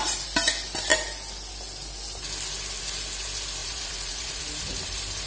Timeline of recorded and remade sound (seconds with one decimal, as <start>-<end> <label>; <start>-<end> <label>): 0.0-3.6 recorded; 3.6-4.4 remade; 4.4-5.3 recorded